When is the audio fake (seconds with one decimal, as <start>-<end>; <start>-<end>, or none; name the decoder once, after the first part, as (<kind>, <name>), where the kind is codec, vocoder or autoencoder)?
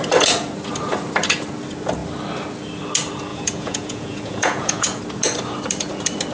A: 3.3-5.0 (vocoder, Vocos)